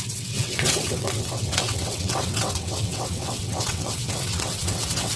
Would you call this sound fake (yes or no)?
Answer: yes